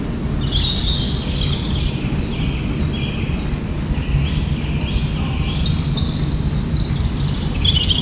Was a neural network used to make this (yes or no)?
no